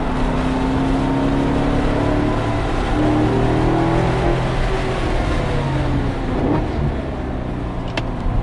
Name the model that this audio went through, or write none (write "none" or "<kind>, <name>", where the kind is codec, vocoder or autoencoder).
none